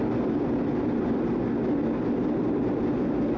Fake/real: real